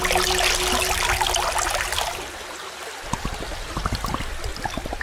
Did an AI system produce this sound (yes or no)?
no